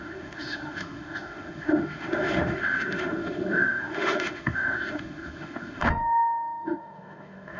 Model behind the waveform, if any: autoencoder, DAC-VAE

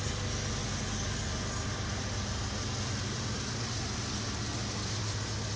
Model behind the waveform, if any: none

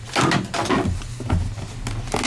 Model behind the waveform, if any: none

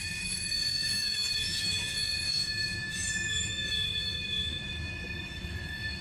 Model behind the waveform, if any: autoencoder, DAC-VAE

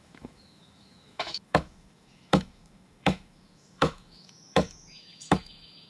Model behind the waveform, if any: autoencoder, DAC-VAE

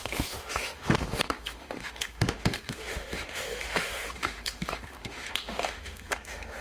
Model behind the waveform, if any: autoencoder, DAC-VAE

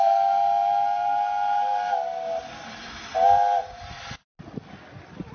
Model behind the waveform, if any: none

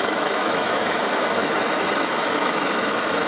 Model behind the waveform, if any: autoencoder, DAC-VAE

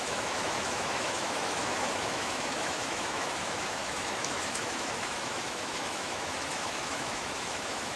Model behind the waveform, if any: autoencoder, DAC-VAE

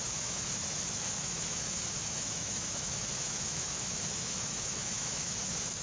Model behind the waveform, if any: autoencoder, DAC-VAE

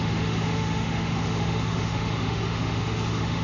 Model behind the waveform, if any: autoencoder, DAC-VAE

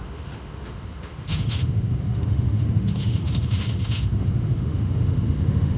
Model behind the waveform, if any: autoencoder, DAC-VAE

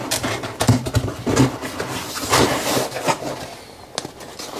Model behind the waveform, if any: none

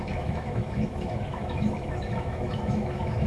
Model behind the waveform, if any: autoencoder, DAC-VAE